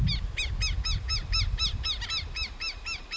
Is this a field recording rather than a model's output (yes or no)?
yes